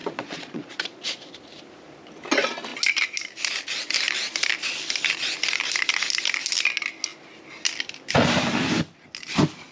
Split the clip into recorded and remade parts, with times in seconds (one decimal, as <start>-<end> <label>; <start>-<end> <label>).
0.0-1.2 remade; 1.2-9.7 recorded